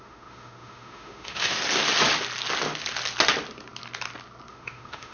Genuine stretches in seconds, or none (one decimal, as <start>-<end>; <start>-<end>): 1.6-4.5